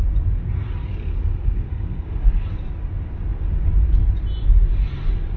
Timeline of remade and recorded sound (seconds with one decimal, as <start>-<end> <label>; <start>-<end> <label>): 0.0-1.3 recorded; 1.3-2.4 remade; 2.4-5.4 recorded